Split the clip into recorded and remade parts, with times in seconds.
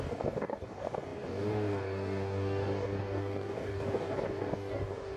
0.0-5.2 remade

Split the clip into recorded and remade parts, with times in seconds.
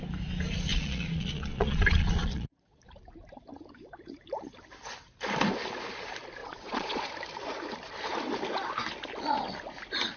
0.0-0.7 recorded; 0.7-2.8 remade; 2.8-6.4 recorded; 6.4-7.1 remade; 7.1-10.2 recorded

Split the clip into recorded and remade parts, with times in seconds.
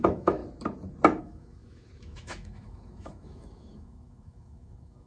0.0-0.4 remade; 0.4-1.2 recorded; 1.2-5.1 remade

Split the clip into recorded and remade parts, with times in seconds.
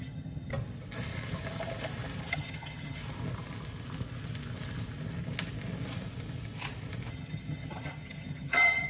0.0-0.5 remade; 0.5-2.3 recorded; 2.3-3.0 remade; 3.0-7.1 recorded; 7.1-8.9 remade